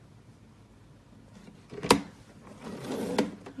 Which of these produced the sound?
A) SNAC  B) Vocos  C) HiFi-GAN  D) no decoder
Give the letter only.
D